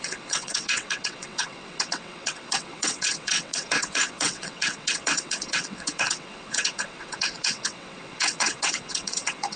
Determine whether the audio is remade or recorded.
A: remade